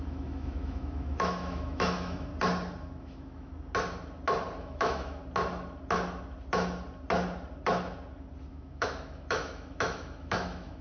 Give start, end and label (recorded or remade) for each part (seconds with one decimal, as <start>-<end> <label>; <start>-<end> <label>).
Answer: 0.0-2.3 remade; 2.3-3.0 recorded; 3.0-3.5 remade; 3.5-4.6 recorded; 4.6-5.2 remade; 5.2-8.5 recorded; 8.5-10.8 remade